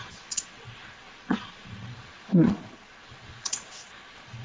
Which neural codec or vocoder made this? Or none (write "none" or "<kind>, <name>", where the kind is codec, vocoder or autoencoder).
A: vocoder, Vocos